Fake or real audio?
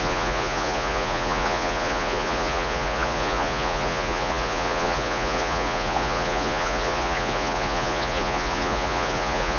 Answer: fake